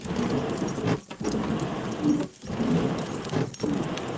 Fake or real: real